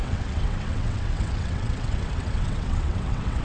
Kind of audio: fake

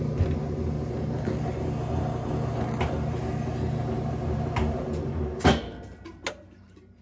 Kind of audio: real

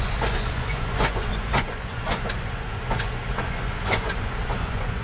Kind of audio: fake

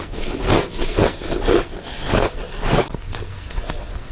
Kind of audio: fake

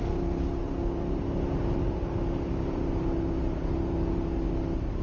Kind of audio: real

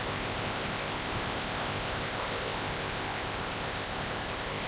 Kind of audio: fake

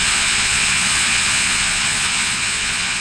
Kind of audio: fake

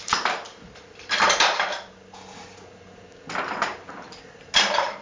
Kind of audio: real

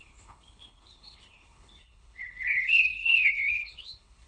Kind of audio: fake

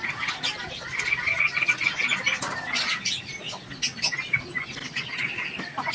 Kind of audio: real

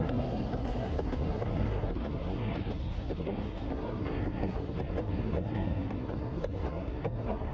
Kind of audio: fake